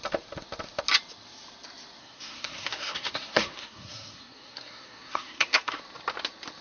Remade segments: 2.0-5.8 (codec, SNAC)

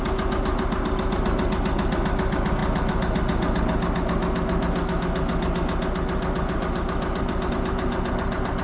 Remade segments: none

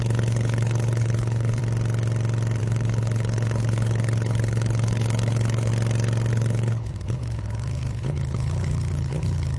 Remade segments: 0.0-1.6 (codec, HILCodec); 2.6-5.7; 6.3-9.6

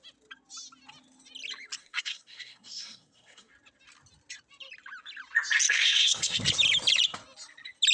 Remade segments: 1.8-3.5 (codec, SNAC); 5.7-6.4